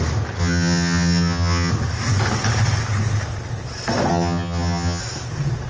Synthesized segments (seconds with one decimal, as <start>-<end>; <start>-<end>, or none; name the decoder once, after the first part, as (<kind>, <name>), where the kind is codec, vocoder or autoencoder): 0.4-1.7 (vocoder, HiFi-GAN); 4.1-5.0